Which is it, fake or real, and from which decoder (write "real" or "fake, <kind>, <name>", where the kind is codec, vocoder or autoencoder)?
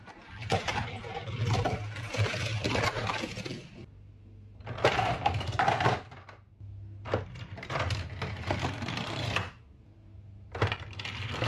fake, vocoder, BigVGAN v2